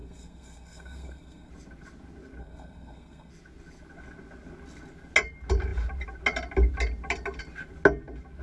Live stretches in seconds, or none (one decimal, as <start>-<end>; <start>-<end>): 1.5-2.4; 3.3-8.4